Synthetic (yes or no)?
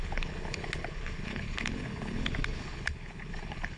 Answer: yes